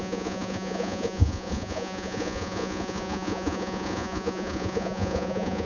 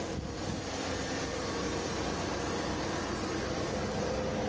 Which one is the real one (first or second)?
second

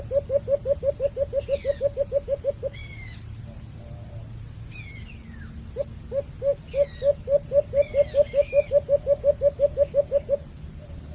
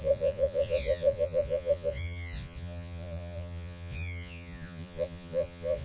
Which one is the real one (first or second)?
first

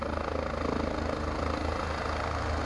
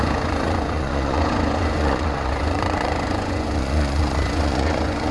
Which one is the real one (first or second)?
first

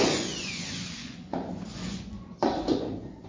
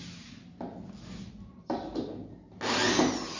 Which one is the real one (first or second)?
second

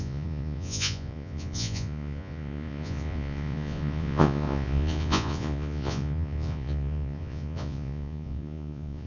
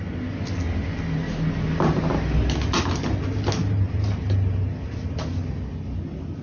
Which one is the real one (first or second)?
second